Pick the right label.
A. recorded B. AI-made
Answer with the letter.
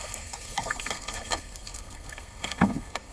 B